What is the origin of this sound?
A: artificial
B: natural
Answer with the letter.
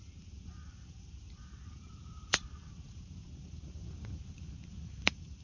A